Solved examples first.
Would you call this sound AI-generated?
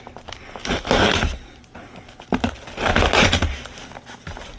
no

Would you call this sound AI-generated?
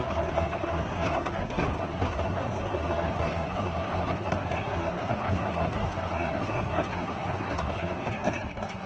yes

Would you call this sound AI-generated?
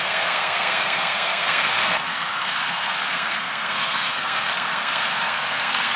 yes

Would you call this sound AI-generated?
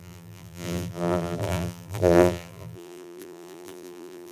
yes